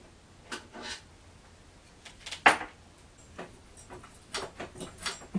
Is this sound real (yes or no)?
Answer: yes